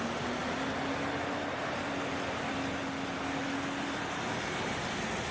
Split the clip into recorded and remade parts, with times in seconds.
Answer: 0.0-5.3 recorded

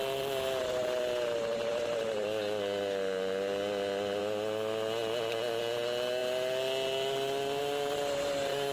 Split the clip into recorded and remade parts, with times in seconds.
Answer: 0.0-8.7 recorded